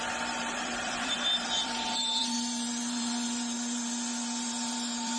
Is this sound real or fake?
fake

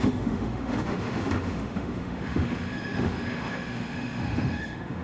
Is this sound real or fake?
fake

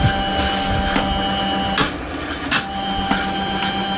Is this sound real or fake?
real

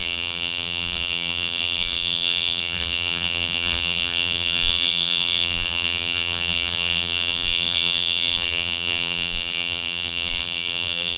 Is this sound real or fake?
fake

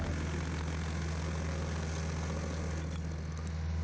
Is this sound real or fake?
real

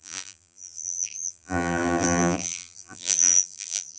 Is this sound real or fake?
fake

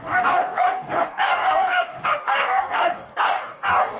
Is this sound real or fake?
fake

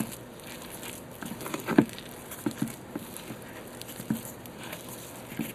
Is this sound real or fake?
real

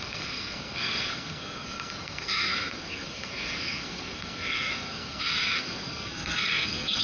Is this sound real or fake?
fake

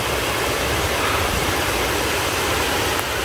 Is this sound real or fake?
real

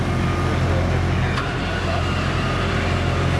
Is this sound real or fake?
real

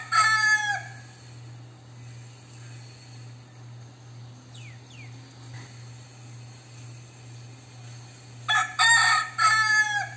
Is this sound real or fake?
real